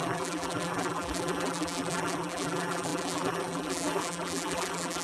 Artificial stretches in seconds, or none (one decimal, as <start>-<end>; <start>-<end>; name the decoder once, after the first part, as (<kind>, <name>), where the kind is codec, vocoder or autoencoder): 0.0-5.0 (vocoder, BigVGAN v2)

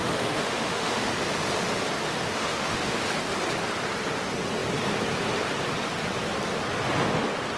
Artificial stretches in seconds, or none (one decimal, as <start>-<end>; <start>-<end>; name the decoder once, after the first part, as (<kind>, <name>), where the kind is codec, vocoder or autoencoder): 0.0-1.1 (autoencoder, DAC-VAE); 2.3-3.0

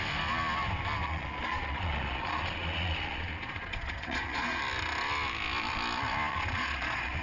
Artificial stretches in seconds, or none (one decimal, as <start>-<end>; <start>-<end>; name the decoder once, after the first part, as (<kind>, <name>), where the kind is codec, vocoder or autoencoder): 1.0-4.6 (vocoder, Vocos); 6.3-7.2

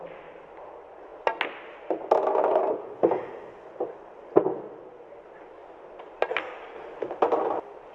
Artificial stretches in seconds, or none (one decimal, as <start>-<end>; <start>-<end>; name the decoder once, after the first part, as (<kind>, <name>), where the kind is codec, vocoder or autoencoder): none

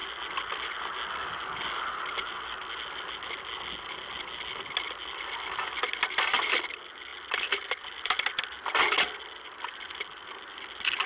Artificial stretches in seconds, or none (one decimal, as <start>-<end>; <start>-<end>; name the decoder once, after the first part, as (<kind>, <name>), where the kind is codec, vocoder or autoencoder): none

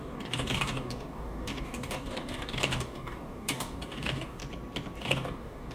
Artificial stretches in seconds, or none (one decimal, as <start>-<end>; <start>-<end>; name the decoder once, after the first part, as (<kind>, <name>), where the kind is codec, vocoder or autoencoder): 0.0-4.4 (codec, DAC); 5.0-5.7

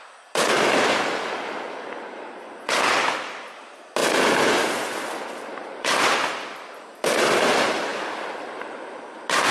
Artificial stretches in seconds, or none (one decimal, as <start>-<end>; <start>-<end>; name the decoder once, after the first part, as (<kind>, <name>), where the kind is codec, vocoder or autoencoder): none

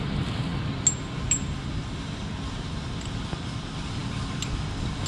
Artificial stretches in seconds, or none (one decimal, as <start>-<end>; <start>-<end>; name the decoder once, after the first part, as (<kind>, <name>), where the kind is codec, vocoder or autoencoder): none